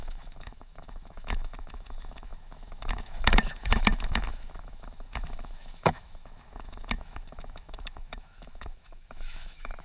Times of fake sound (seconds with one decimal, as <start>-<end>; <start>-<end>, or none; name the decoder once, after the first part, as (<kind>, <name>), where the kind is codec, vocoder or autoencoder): 0.0-9.8 (autoencoder, DAC-VAE)

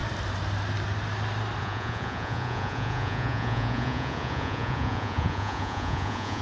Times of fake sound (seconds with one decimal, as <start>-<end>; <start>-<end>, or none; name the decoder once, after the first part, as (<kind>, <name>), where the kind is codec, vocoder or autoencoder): 1.6-6.4 (vocoder, Vocos)

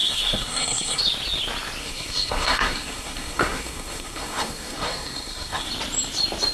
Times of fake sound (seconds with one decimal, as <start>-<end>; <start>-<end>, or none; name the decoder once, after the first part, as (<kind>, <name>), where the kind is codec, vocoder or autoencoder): 0.0-1.0 (codec, SNAC); 1.8-5.7

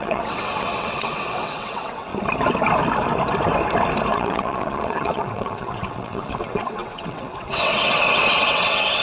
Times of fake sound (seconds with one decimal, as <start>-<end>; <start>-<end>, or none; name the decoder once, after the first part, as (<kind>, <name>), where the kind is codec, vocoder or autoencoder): 0.0-2.1 (vocoder, WaveNeXt); 4.1-9.0

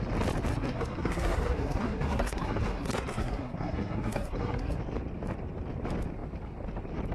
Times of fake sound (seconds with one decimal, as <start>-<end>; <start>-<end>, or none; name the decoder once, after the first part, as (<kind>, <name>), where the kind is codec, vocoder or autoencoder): 0.5-4.8 (codec, SNAC)